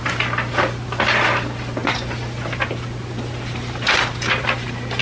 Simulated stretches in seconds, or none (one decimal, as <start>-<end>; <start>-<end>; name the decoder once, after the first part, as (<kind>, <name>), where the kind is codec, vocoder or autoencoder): none